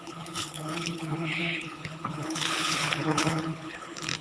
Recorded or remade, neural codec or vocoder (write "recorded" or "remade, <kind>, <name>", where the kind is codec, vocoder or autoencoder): remade, codec, HILCodec